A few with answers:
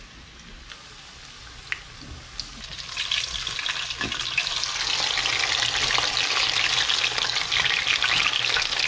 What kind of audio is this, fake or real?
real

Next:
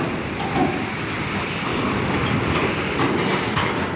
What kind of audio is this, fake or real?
fake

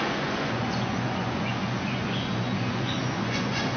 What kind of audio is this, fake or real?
fake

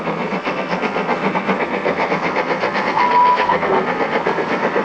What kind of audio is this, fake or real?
fake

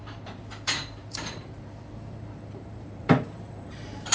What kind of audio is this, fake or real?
fake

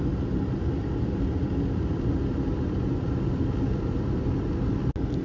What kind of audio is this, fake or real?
real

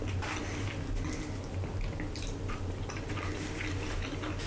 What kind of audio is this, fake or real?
real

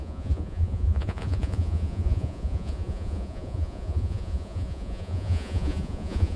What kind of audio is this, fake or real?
fake